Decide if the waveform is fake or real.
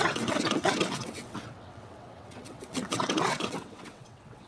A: fake